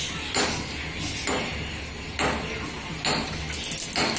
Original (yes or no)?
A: yes